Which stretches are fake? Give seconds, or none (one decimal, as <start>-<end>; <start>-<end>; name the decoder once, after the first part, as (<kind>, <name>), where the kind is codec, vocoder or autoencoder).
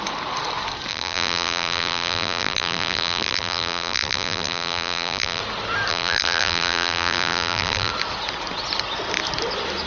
0.9-5.4 (vocoder, BigVGAN v2); 5.9-7.9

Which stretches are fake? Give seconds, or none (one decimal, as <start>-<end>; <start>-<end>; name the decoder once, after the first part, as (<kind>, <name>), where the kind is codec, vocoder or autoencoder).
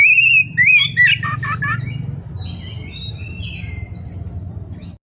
0.4-1.6 (vocoder, BigVGAN v2)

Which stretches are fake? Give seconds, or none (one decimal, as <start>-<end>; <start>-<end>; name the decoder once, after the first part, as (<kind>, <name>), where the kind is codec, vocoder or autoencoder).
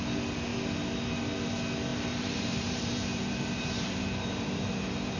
1.9-5.2 (vocoder, BigVGAN v2)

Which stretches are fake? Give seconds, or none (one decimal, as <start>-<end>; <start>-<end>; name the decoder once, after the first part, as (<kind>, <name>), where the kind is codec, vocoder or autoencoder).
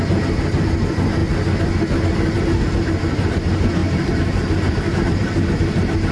3.8-5.5 (vocoder, BigVGAN v2)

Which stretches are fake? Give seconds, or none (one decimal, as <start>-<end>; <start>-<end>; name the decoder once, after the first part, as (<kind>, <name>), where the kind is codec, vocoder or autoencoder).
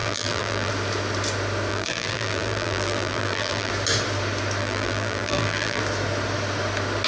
0.0-0.7 (vocoder, BigVGAN v2); 1.7-3.7; 4.6-5.8